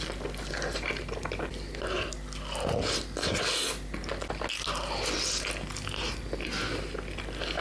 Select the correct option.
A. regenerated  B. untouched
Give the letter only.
B